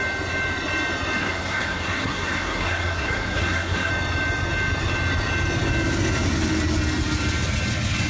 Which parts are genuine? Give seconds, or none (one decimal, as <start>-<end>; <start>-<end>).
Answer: 0.0-1.2; 3.9-8.1